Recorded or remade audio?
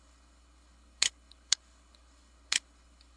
remade